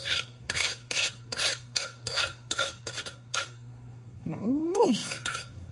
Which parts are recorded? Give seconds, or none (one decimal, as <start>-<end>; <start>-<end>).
none

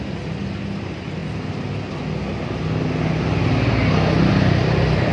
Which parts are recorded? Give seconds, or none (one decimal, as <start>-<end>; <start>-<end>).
0.0-5.1

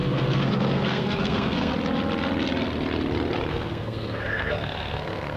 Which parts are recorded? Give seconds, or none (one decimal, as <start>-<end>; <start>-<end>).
1.7-3.5